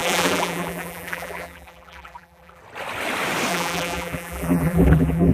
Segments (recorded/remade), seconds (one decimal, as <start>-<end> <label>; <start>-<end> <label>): 0.0-2.6 remade; 2.6-3.5 recorded; 3.5-5.3 remade